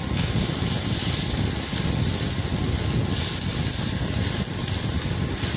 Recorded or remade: recorded